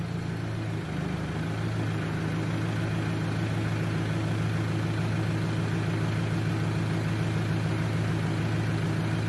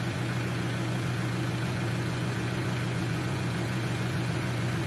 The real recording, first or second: first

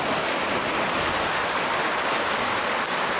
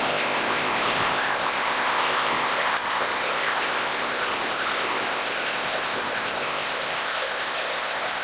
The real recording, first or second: first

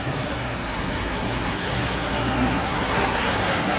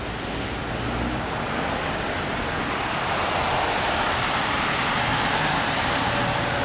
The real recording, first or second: second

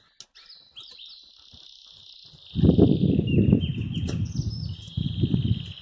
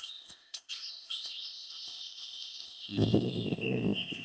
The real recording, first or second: first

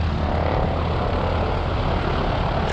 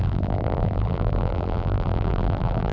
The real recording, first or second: first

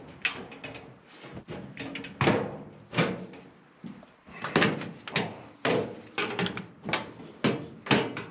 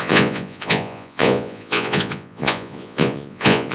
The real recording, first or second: first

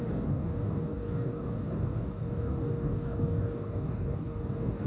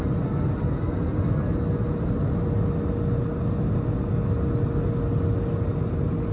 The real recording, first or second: second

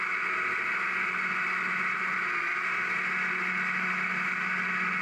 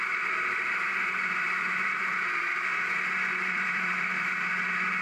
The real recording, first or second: first